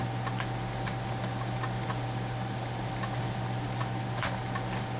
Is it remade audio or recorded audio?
recorded